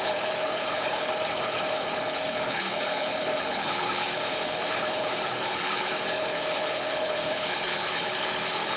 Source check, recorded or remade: remade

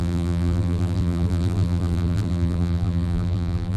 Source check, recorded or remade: remade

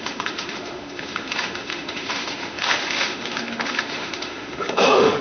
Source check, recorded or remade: remade